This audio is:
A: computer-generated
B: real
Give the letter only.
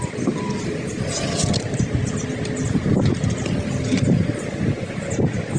B